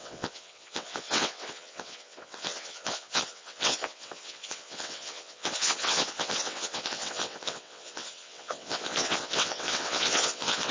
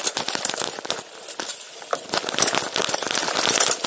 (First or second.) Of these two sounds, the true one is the second